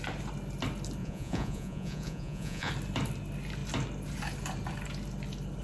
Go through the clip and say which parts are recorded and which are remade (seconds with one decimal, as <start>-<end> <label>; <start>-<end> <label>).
0.0-1.0 recorded; 1.0-2.7 remade; 2.7-5.6 recorded